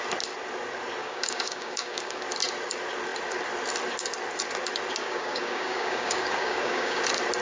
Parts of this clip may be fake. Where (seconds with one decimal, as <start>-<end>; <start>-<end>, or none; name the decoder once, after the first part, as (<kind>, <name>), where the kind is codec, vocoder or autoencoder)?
1.0-2.2 (codec, DAC); 5.0-7.0